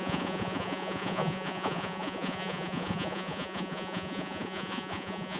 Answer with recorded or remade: remade